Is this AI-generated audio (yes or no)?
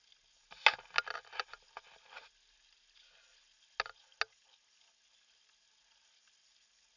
no